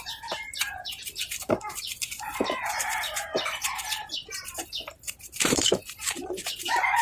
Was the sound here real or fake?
fake